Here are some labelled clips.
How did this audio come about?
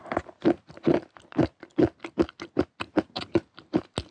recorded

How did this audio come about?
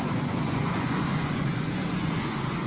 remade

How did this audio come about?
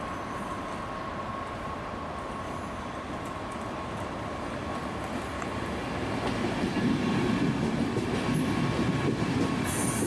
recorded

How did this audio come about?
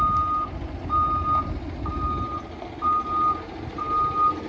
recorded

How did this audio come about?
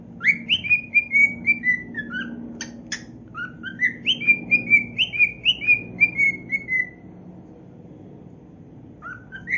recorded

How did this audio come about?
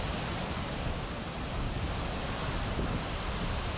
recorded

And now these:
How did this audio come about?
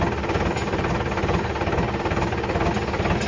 recorded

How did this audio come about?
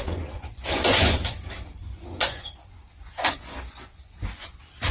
remade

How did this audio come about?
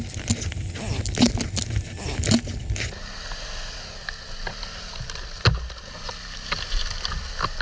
recorded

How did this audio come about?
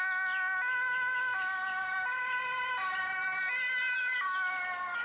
recorded